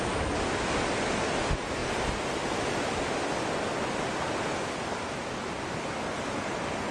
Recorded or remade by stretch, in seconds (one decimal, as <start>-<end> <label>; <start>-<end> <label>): 0.0-6.9 recorded